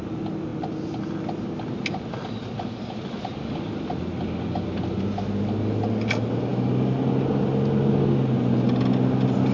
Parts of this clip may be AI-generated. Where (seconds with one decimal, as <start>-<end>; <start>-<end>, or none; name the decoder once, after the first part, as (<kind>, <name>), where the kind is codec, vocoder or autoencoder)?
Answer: none

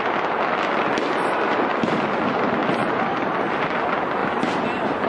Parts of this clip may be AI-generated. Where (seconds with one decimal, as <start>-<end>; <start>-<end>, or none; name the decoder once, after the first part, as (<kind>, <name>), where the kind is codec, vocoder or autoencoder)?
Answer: 2.8-3.6 (vocoder, BigVGAN v2)

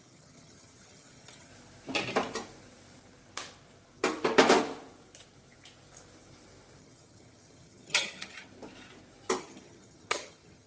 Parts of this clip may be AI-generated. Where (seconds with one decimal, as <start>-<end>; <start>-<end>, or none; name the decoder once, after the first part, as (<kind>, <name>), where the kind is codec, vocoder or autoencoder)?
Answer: 0.0-1.5 (vocoder, HiFi-GAN); 6.8-8.5; 9.4-10.7

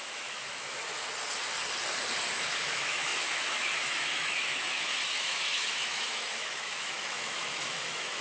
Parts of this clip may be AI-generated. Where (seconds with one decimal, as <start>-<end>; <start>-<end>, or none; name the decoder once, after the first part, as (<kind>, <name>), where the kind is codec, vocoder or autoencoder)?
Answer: 0.0-0.8 (autoencoder, DAC-VAE); 2.3-8.2